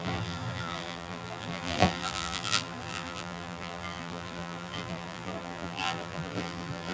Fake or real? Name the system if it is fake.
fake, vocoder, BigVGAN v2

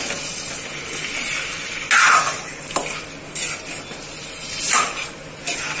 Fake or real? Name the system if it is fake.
real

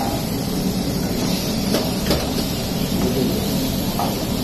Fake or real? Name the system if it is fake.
fake, vocoder, BigVGAN v2